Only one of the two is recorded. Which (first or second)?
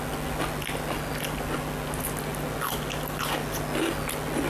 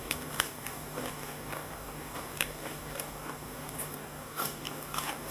first